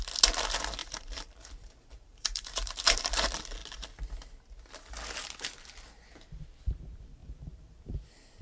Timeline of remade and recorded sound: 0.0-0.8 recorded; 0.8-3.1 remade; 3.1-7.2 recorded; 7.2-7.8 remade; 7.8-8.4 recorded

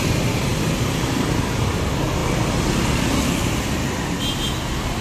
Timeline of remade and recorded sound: 0.0-5.0 recorded

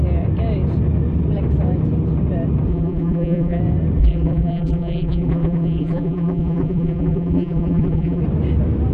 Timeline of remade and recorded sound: 0.0-2.7 recorded; 2.7-3.6 remade; 3.6-4.0 recorded; 4.0-8.2 remade; 8.2-8.9 recorded

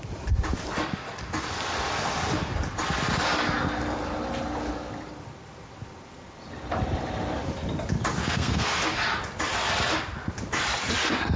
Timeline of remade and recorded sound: 0.0-8.2 recorded; 8.2-8.8 remade; 8.8-11.4 recorded

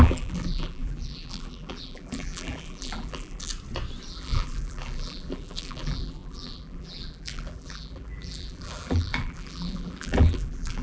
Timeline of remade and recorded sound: 0.0-3.5 remade; 3.5-4.1 recorded; 4.1-10.8 remade

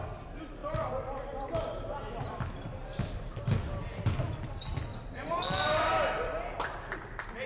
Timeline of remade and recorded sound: 0.0-7.5 recorded

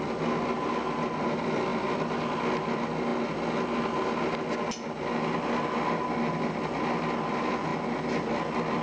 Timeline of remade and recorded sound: 0.0-8.8 recorded

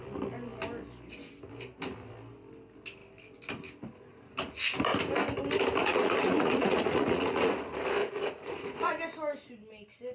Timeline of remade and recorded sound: 0.0-5.8 recorded; 5.8-7.5 remade; 7.5-8.0 recorded; 8.0-8.9 remade; 8.9-10.1 recorded